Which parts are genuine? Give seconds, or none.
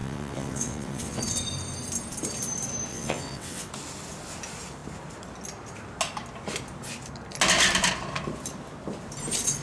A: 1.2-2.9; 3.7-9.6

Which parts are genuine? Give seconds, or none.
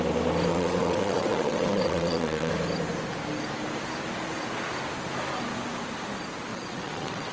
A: 0.0-0.5; 2.5-6.5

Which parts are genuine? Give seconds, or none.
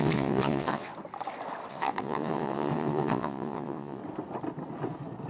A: 0.9-1.7; 4.0-5.3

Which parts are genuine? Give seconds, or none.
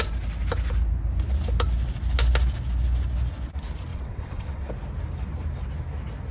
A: 0.0-3.9; 4.7-6.3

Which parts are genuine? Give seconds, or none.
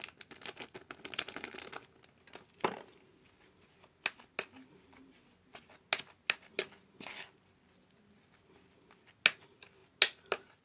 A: 0.0-10.6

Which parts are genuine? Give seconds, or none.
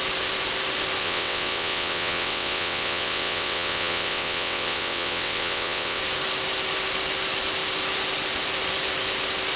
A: 0.0-1.0; 6.0-9.6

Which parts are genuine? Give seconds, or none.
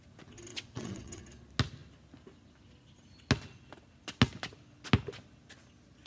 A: 0.0-0.5; 1.2-6.1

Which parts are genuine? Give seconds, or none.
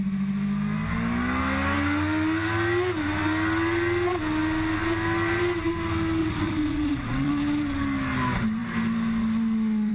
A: 0.0-6.2; 7.3-9.9